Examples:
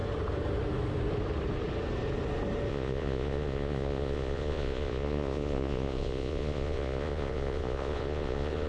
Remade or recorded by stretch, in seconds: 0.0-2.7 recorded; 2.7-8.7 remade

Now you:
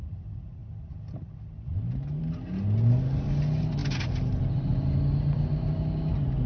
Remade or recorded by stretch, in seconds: 0.0-6.5 recorded

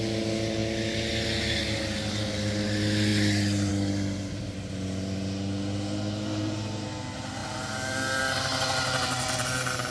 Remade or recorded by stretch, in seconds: 0.0-9.9 recorded

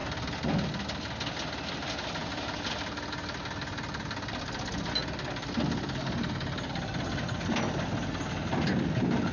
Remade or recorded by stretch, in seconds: 0.0-9.3 recorded

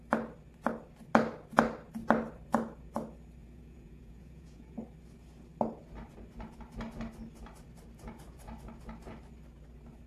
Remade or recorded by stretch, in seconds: 0.0-3.4 recorded; 3.4-4.8 remade; 4.8-10.1 recorded